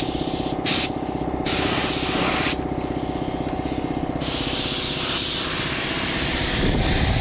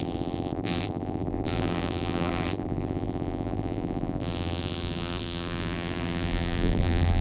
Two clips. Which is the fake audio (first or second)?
second